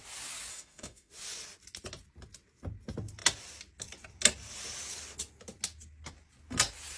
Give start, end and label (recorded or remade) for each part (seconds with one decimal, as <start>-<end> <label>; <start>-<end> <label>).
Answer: 0.0-0.5 recorded; 0.5-1.1 remade; 1.1-7.0 recorded